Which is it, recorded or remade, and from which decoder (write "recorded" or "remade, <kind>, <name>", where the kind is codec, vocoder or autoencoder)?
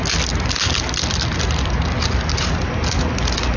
recorded